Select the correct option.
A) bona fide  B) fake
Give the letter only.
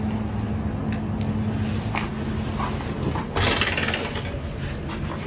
A